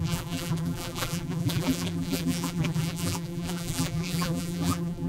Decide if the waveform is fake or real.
fake